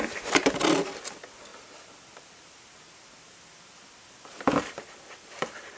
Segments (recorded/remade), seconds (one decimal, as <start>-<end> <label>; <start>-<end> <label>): 0.0-1.5 recorded; 1.5-5.0 remade; 5.0-5.8 recorded